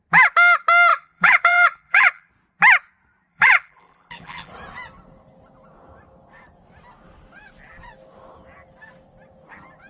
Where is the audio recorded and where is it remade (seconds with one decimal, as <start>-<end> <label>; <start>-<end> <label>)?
0.0-0.9 recorded; 0.9-2.3 remade; 2.3-3.3 recorded; 3.3-4.5 remade; 4.5-9.9 recorded